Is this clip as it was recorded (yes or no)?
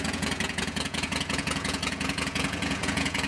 no